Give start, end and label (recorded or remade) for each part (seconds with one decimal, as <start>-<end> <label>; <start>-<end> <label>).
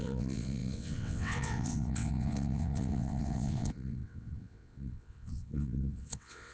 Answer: 0.0-6.5 remade